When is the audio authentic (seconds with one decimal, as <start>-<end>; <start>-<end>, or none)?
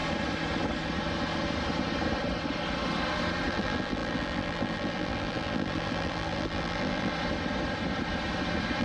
0.0-3.5; 7.1-8.8